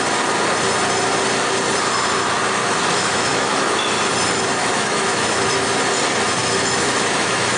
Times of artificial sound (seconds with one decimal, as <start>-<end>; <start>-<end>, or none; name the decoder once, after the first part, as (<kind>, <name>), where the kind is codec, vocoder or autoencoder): 2.6-3.9 (autoencoder, DAC-VAE); 4.6-5.7; 6.4-7.6